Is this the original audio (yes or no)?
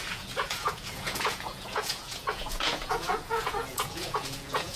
no